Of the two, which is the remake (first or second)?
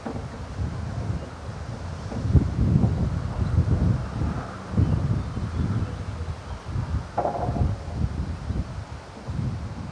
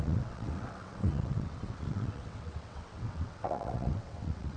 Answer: second